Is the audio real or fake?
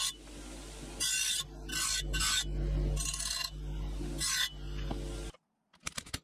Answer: real